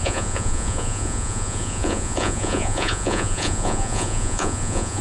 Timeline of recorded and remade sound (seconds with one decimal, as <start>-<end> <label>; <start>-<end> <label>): 0.0-5.0 remade